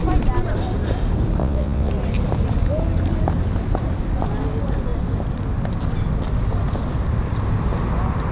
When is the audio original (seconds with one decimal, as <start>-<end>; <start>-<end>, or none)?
0.0-1.4; 1.9-8.3